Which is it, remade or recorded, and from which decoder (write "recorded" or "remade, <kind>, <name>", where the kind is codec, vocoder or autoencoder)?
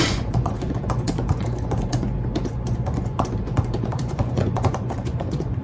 remade, vocoder, Vocos